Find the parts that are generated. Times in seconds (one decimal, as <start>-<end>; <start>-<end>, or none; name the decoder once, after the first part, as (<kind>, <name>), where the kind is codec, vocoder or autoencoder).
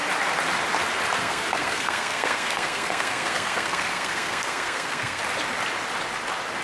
1.2-5.2 (codec, SNAC)